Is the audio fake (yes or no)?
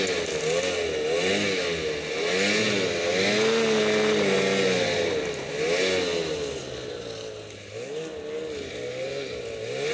no